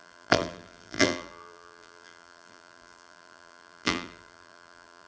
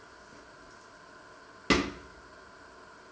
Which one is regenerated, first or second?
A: first